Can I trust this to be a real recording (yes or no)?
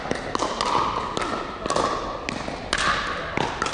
yes